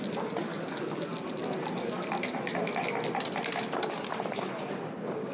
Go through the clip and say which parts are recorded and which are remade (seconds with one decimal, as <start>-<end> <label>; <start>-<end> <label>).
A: 0.0-5.3 recorded

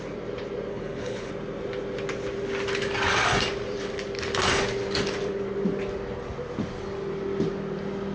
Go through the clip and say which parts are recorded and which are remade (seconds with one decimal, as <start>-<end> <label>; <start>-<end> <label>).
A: 0.0-0.7 recorded; 0.7-1.3 remade; 1.3-8.1 recorded

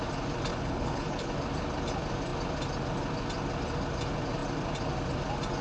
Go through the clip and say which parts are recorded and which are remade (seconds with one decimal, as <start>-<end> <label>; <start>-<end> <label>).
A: 0.0-0.5 recorded; 0.5-1.3 remade; 1.3-5.6 recorded

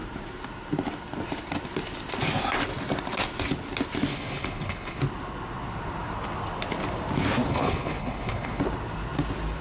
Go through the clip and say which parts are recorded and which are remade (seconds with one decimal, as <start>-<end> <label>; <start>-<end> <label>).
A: 0.0-4.1 recorded; 4.1-5.0 remade; 5.0-7.5 recorded; 7.5-8.6 remade; 8.6-9.6 recorded

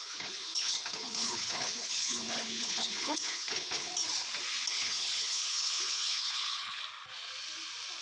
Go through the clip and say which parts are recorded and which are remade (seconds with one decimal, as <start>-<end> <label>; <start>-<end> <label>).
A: 0.0-3.9 remade; 3.9-4.7 recorded; 4.7-6.8 remade; 6.8-8.0 recorded

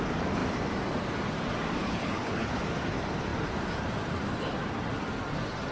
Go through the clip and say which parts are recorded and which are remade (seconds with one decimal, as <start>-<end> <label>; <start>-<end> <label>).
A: 0.0-1.8 recorded; 1.8-2.6 remade; 2.6-5.7 recorded

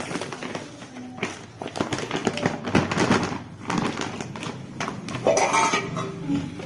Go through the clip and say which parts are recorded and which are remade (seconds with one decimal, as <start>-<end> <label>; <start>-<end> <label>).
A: 0.0-6.7 recorded

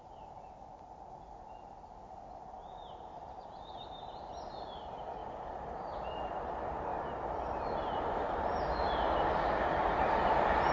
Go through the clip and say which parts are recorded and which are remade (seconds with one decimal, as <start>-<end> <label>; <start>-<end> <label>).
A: 0.0-10.7 recorded